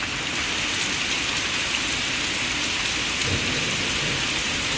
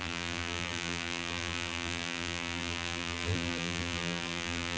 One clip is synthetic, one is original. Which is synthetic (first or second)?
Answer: second